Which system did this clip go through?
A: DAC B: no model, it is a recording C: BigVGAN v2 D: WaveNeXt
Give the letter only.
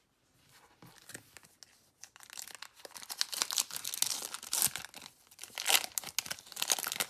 B